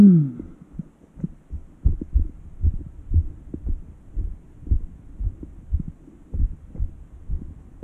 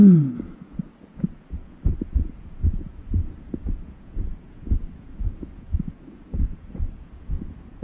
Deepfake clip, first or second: second